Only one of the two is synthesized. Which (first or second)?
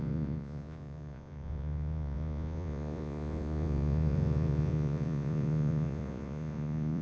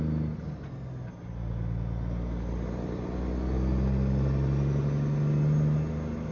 first